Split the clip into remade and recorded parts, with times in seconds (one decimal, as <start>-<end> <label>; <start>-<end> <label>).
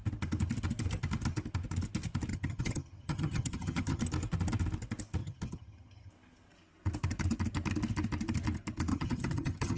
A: 0.0-2.3 recorded; 2.3-4.0 remade; 4.0-5.2 recorded; 5.2-6.1 remade; 6.1-8.9 recorded; 8.9-9.8 remade